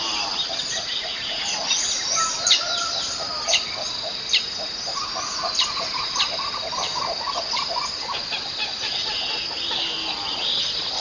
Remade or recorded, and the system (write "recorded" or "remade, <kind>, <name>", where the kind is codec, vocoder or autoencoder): recorded